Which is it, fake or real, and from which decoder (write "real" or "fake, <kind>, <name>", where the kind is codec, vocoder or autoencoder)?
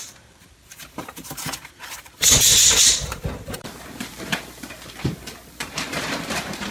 fake, vocoder, BigVGAN v2